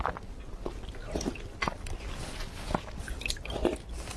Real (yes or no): yes